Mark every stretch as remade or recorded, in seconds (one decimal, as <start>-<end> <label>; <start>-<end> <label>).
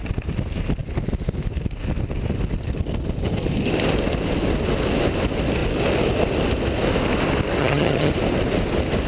0.0-7.6 recorded; 7.6-8.1 remade; 8.1-9.1 recorded